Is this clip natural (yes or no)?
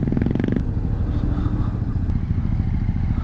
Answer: yes